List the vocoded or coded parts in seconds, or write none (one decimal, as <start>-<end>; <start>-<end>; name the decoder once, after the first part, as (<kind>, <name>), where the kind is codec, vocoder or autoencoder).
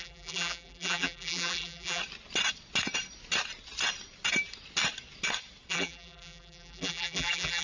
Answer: 0.0-2.0 (vocoder, BigVGAN v2); 5.7-7.6